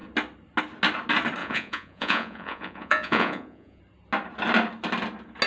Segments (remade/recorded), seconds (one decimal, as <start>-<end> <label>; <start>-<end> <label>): 0.0-1.4 recorded; 1.4-3.8 remade; 3.8-5.5 recorded